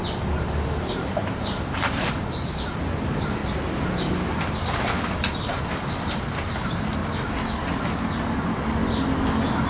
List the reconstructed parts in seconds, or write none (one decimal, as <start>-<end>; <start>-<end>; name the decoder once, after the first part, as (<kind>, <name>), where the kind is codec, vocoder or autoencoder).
0.0-3.4 (vocoder, BigVGAN v2); 4.3-7.0